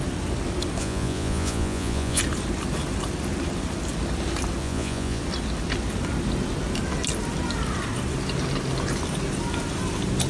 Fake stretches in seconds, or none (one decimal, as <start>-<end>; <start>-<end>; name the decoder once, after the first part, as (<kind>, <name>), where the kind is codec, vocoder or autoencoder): 0.8-2.2 (vocoder, Vocos); 4.6-5.2